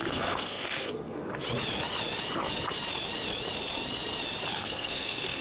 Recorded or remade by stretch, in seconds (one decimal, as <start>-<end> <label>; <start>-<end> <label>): 0.0-1.3 remade; 1.3-4.5 recorded; 4.5-5.4 remade

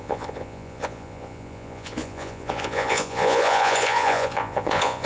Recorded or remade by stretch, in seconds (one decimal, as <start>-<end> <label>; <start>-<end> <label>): 0.0-5.1 remade